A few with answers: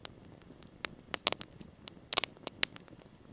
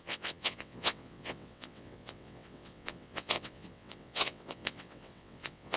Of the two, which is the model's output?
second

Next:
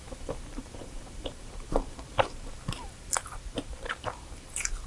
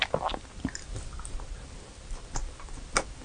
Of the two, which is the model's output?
first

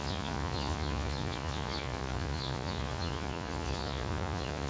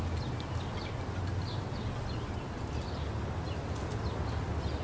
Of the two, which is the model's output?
first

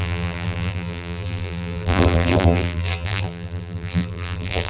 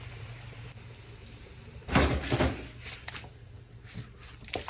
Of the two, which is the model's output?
first